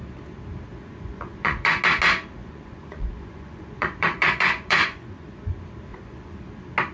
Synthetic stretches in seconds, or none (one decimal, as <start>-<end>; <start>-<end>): 0.7-1.8; 2.4-5.4; 5.9-6.4